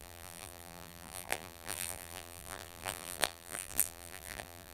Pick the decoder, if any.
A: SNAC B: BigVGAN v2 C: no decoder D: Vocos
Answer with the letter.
B